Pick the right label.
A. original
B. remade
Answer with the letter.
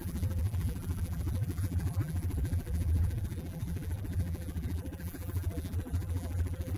B